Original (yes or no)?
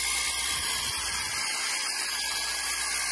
yes